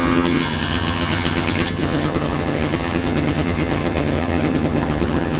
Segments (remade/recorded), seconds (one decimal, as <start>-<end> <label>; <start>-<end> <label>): 0.0-5.4 remade